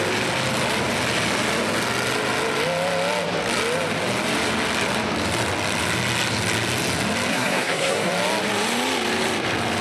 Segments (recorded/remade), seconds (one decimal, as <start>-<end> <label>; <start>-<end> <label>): 0.0-7.3 recorded; 7.3-8.1 remade; 8.1-9.8 recorded